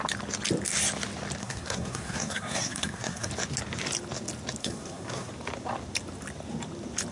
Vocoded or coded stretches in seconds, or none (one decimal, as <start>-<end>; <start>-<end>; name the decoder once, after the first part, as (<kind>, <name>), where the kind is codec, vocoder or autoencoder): 1.4-3.3 (codec, SNAC); 4.6-5.3